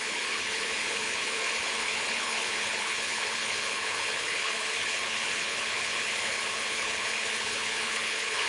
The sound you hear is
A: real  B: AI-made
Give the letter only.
B